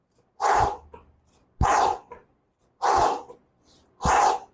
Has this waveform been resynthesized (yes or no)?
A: no